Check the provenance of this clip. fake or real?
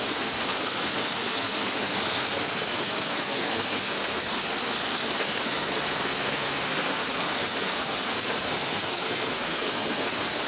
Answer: fake